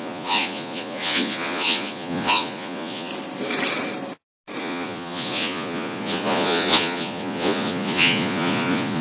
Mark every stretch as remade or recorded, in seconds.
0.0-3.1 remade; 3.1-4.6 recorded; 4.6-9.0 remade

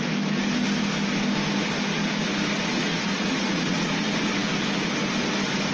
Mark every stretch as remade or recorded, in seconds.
0.0-2.8 recorded; 2.8-3.9 remade; 3.9-5.7 recorded

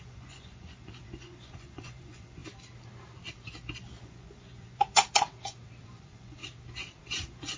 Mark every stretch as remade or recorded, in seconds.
0.0-2.4 remade; 2.4-4.0 recorded; 4.0-5.0 remade; 5.0-5.8 recorded; 5.8-6.4 remade; 6.4-7.0 recorded; 7.0-7.6 remade

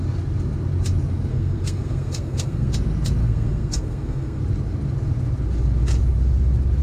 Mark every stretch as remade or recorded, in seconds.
0.0-1.3 recorded; 1.3-2.7 remade; 2.7-3.2 recorded; 3.2-4.4 remade; 4.4-6.8 recorded

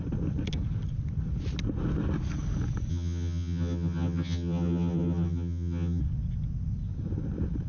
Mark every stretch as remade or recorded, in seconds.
0.0-2.9 recorded; 2.9-6.0 remade; 6.0-7.7 recorded

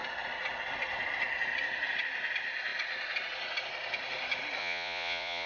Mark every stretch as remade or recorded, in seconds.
0.0-4.6 recorded; 4.6-5.5 remade